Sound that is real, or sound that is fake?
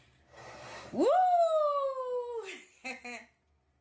real